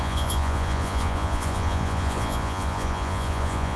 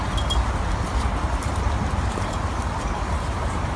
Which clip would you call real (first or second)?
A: second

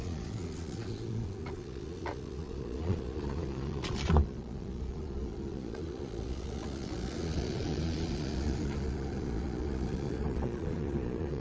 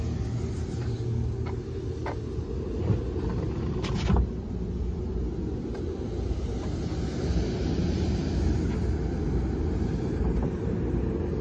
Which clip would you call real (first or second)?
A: second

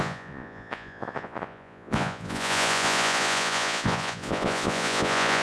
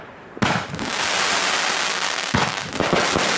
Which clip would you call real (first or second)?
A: second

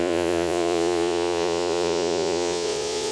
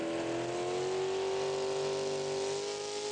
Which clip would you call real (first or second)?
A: second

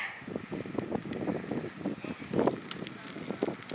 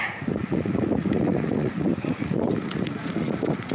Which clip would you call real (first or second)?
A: first